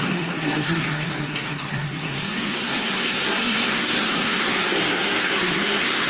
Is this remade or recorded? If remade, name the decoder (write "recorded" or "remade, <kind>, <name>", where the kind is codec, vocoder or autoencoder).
remade, codec, SNAC